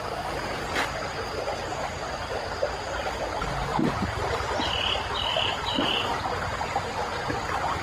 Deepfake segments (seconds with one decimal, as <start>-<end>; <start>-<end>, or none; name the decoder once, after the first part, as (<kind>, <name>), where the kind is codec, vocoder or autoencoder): 0.5-3.0 (vocoder, BigVGAN v2); 3.7-4.7